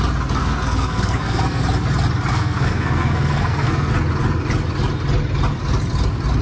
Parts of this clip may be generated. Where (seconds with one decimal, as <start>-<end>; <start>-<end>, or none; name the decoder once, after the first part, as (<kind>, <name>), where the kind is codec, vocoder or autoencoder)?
0.4-1.6 (codec, SNAC); 2.3-3.9